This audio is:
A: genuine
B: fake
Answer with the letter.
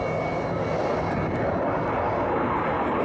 A